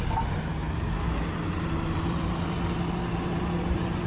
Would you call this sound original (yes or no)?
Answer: no